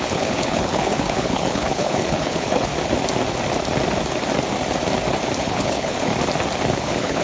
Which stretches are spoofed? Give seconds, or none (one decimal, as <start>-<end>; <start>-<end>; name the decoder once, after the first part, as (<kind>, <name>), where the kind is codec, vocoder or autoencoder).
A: 0.0-2.7 (codec, HILCodec); 5.4-6.1; 6.7-7.2